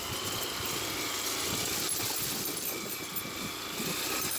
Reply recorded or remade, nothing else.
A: recorded